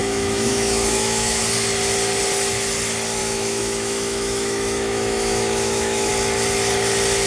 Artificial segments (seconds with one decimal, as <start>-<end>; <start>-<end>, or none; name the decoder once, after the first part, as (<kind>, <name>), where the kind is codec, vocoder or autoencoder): 0.0-1.4 (autoencoder, DAC-VAE); 3.2-6.1